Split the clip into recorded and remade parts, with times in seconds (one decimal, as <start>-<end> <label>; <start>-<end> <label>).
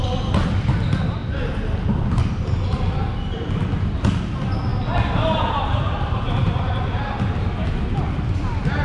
0.0-4.7 recorded; 4.7-6.7 remade; 6.7-8.8 recorded